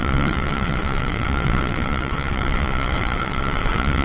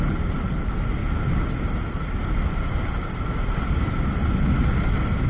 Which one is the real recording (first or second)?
second